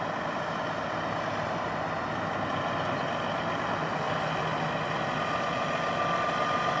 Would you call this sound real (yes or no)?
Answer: yes